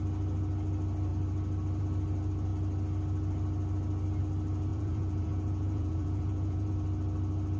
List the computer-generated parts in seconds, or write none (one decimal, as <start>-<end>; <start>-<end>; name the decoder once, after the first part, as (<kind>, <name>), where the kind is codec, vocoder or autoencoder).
4.7-6.7 (vocoder, Vocos)